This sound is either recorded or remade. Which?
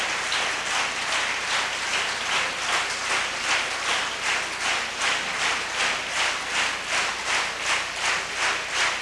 recorded